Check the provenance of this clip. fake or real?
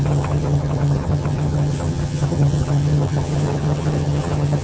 fake